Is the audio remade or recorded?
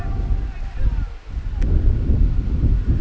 recorded